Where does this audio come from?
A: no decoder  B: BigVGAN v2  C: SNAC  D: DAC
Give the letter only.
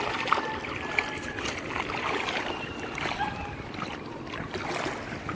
B